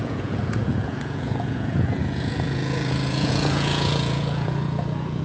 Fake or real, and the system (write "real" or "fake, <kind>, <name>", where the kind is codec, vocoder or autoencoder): fake, vocoder, Vocos